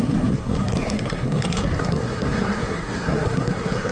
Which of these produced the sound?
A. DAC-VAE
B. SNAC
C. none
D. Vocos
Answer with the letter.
B